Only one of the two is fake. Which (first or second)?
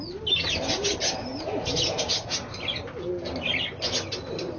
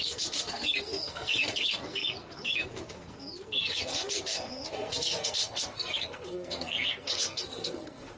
second